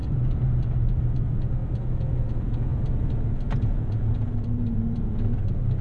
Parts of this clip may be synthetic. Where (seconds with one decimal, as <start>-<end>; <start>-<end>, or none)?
0.0-2.7; 3.6-5.8